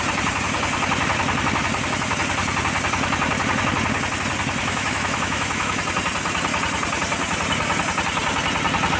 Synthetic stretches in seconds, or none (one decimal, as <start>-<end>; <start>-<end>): 4.6-5.8